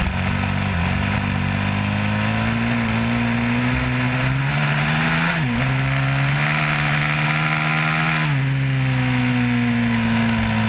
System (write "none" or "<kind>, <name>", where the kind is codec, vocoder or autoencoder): none